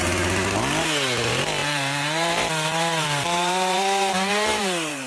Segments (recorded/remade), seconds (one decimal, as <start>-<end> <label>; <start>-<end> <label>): 0.0-1.6 recorded; 1.6-5.1 remade